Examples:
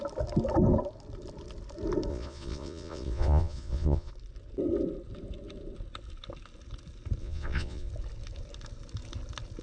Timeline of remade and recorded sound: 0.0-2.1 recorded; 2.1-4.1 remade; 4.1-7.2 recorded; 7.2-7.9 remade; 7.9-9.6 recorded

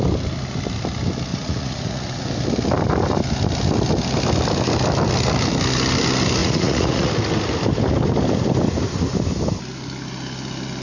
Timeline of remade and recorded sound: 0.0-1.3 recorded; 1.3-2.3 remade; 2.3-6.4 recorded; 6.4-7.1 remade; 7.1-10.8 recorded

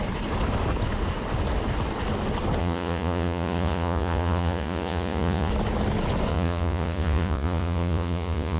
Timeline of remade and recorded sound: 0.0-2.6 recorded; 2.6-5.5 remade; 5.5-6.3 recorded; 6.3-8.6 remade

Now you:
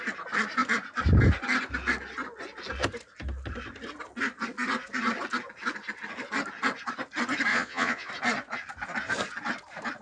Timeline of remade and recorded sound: 0.0-7.5 recorded; 7.5-8.1 remade; 8.1-10.0 recorded

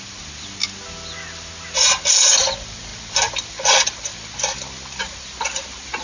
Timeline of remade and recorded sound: 0.0-6.0 recorded

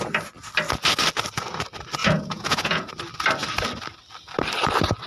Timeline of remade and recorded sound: 0.0-2.0 recorded; 2.0-2.9 remade; 2.9-5.1 recorded

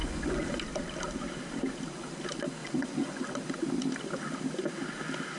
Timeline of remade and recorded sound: 0.0-0.6 remade; 0.6-2.6 recorded; 2.6-3.2 remade; 3.2-5.4 recorded